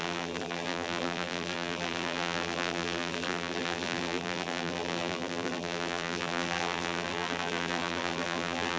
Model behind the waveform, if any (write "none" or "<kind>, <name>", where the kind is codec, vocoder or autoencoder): vocoder, BigVGAN v2